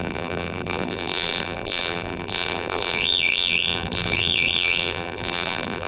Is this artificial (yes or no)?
yes